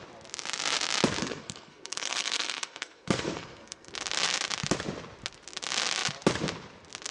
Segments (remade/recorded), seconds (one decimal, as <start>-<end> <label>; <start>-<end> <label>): 0.0-1.2 recorded; 1.2-3.9 remade; 3.9-7.1 recorded